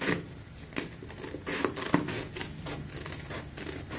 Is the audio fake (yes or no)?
no